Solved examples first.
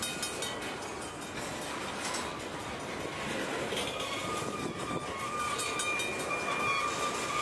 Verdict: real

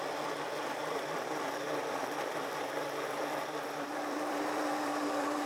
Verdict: fake